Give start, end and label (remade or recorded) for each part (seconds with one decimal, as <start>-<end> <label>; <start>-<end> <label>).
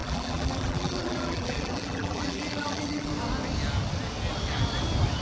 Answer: 0.0-3.1 remade; 3.1-5.2 recorded